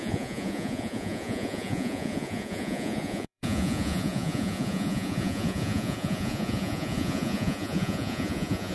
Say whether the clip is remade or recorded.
remade